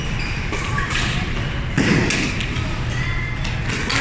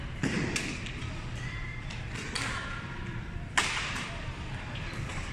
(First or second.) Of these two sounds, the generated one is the second